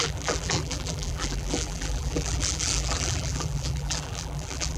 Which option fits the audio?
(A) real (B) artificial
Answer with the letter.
B